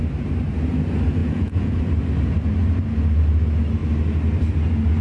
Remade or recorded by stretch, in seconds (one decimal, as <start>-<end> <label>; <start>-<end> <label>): 0.0-1.2 recorded; 1.2-1.8 remade; 1.8-5.0 recorded